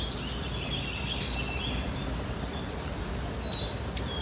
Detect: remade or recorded recorded